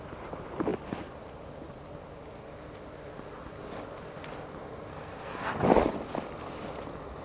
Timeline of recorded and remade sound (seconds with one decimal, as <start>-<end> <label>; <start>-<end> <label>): 0.0-4.9 recorded; 4.9-5.5 remade; 5.5-7.2 recorded